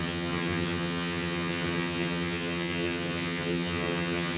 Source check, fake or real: fake